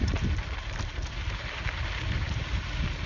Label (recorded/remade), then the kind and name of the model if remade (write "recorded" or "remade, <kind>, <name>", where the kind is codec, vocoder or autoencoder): recorded